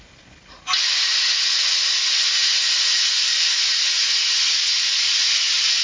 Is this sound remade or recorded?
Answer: recorded